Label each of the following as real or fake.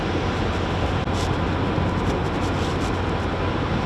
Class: real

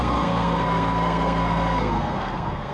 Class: fake